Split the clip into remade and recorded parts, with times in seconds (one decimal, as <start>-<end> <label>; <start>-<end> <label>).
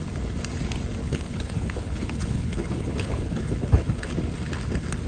0.0-1.0 recorded; 1.0-4.1 remade; 4.1-5.1 recorded